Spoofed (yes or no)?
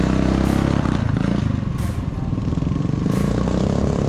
no